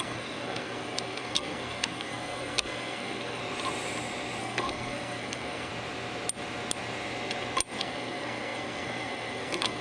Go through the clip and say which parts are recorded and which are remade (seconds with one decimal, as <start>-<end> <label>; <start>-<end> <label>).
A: 0.0-3.4 remade; 3.4-4.4 recorded; 4.4-5.7 remade; 5.7-7.8 recorded; 7.8-9.8 remade